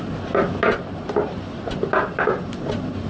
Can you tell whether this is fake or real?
real